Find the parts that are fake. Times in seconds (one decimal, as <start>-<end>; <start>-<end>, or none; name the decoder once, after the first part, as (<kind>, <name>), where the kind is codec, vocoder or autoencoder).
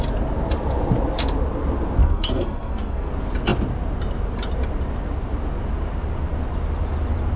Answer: 2.0-3.1 (codec, SNAC)